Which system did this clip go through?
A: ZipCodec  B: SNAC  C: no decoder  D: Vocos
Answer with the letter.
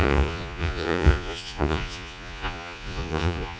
D